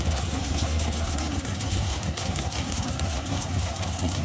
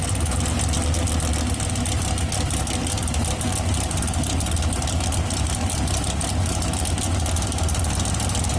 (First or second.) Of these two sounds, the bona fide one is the second